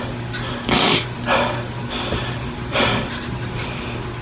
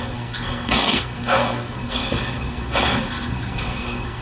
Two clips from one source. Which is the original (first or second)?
first